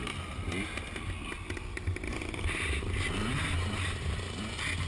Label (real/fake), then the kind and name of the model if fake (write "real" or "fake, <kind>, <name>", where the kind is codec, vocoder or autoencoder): real